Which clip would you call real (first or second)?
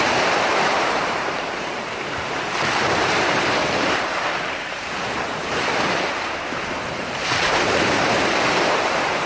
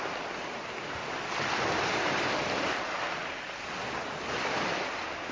second